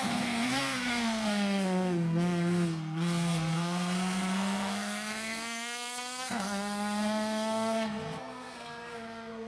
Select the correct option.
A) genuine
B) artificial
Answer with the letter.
B